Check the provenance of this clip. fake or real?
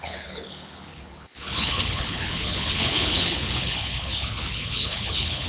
fake